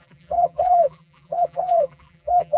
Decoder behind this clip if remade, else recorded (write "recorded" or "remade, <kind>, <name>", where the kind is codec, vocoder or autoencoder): remade, vocoder, BigVGAN v2